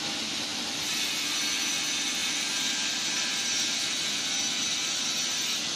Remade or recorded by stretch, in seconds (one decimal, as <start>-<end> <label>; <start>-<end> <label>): 0.0-2.2 recorded; 2.2-5.8 remade

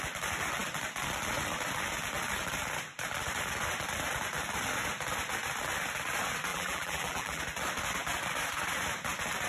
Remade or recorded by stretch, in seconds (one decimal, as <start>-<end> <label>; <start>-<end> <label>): 0.0-6.5 recorded; 6.5-7.4 remade; 7.4-9.5 recorded

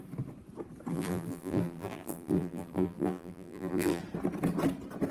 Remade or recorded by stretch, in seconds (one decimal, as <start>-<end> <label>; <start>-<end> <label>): 0.0-0.9 recorded; 0.9-4.0 remade; 4.0-5.1 recorded

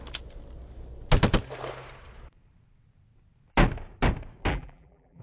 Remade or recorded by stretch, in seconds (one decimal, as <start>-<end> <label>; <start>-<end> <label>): 0.0-4.5 recorded; 4.5-5.2 remade

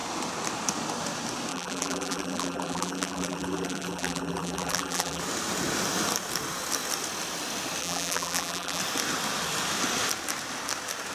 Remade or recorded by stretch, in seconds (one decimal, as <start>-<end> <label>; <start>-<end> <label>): 0.0-1.5 recorded; 1.5-5.2 remade; 5.2-7.8 recorded; 7.8-8.8 remade; 8.8-11.1 recorded

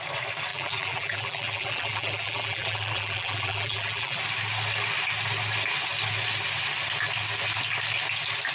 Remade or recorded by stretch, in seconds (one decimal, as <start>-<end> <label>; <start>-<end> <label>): 0.0-0.5 recorded; 0.5-4.2 remade; 4.2-8.5 recorded

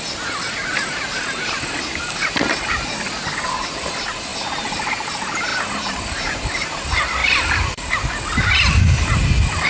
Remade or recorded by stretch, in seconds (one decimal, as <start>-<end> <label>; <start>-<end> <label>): 0.0-4.3 recorded; 4.3-4.9 remade; 4.9-7.2 recorded; 7.2-8.4 remade; 8.4-9.7 recorded

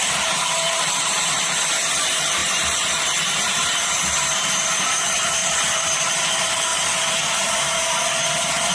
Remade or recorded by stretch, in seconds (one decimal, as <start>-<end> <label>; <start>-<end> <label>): 0.0-5.4 remade; 5.4-6.0 recorded; 6.0-6.7 remade; 6.7-8.7 recorded